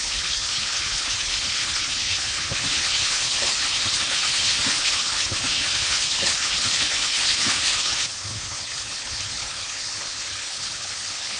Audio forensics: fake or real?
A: fake